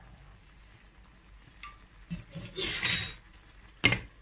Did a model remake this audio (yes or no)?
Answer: no